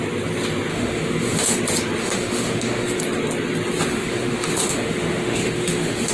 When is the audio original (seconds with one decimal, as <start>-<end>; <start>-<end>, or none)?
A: 0.0-0.7; 1.6-2.0; 3.0-3.9